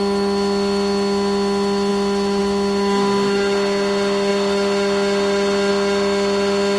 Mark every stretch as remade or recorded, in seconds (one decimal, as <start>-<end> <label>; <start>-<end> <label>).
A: 0.0-6.8 recorded